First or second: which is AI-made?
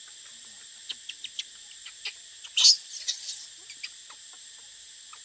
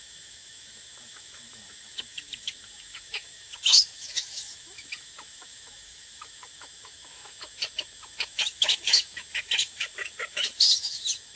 second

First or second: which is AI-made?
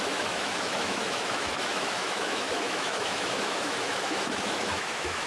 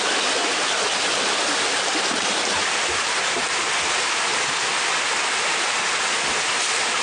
first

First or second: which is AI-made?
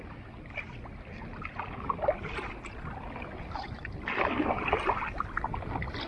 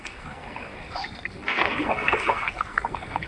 second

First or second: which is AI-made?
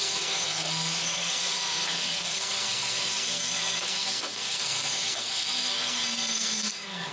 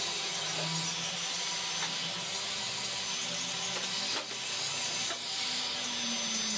first